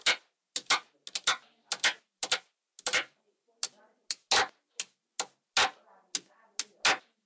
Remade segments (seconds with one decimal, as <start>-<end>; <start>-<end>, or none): 2.9-3.4